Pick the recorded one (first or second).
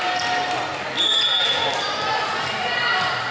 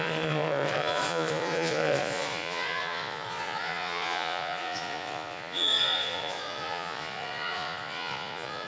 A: first